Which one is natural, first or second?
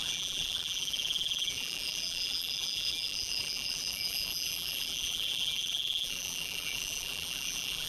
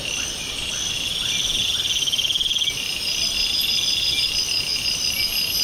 second